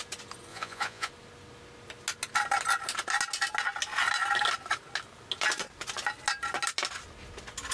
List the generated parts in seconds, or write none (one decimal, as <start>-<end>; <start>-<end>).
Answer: 0.5-1.1